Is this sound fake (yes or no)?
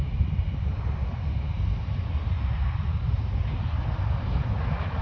no